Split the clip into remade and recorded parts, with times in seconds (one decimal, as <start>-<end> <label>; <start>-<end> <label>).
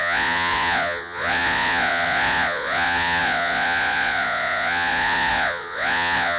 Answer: 0.0-6.4 remade